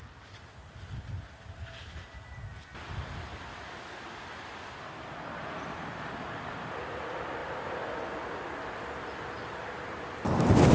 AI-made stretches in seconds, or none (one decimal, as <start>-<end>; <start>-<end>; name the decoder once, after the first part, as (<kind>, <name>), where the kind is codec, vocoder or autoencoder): none